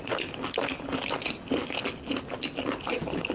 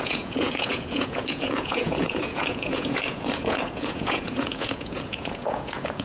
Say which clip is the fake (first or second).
second